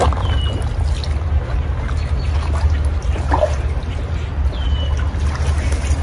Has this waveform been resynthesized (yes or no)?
no